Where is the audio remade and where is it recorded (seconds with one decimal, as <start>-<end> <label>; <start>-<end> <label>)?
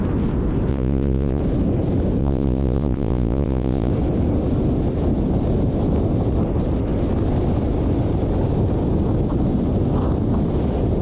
0.0-0.7 recorded; 0.7-1.4 remade; 1.4-2.2 recorded; 2.2-3.9 remade; 3.9-11.0 recorded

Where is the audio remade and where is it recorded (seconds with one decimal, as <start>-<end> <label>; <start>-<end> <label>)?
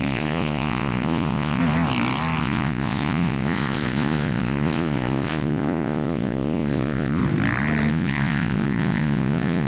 0.0-1.6 remade; 1.6-2.4 recorded; 2.4-7.2 remade; 7.2-7.9 recorded; 7.9-9.7 remade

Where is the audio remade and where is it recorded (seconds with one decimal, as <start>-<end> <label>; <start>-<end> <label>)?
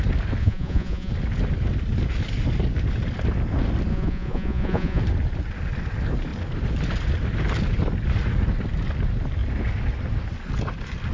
0.0-0.4 recorded; 0.4-1.1 remade; 1.1-3.9 recorded; 3.9-5.0 remade; 5.0-11.1 recorded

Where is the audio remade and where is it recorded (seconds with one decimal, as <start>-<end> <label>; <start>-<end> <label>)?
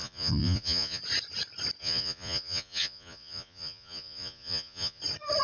0.0-1.0 remade; 1.0-1.8 recorded; 1.8-5.0 remade; 5.0-5.4 recorded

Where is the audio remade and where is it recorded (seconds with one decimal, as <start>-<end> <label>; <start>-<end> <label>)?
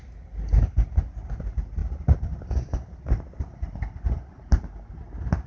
0.0-5.5 recorded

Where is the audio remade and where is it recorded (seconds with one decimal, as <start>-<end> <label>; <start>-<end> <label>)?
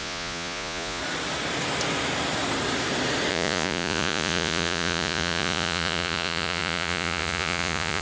0.0-1.0 remade; 1.0-3.3 recorded; 3.3-8.0 remade